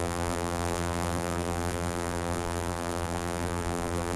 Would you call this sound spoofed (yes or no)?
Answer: yes